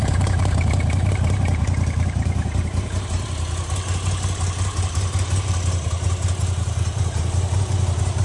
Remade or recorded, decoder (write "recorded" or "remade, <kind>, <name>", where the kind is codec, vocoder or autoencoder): remade, vocoder, BigVGAN v2